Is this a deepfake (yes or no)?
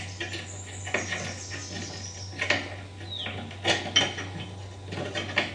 no